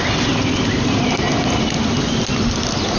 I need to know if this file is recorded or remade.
recorded